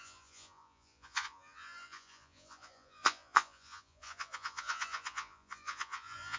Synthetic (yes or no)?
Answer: yes